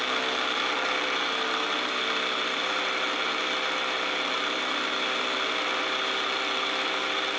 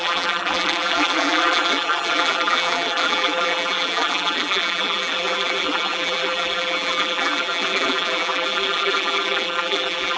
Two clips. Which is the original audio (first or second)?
first